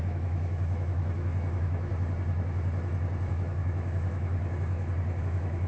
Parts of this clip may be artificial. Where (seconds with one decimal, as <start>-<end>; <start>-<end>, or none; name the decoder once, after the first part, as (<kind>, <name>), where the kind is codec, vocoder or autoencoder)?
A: 0.0-1.9 (autoencoder, DAC-VAE); 3.3-4.3; 5.2-5.7